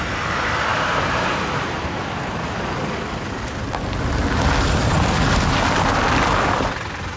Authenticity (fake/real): real